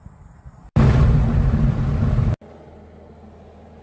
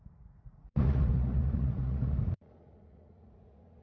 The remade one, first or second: second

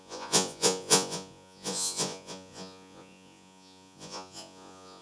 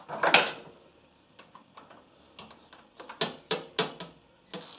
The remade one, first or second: first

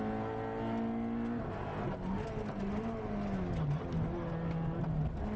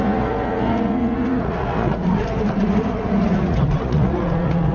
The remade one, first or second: second